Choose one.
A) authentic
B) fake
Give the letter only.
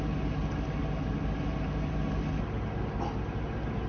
A